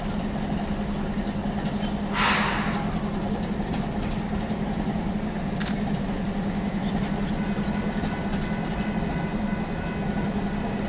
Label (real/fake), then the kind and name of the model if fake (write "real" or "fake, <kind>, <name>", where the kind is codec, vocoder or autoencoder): real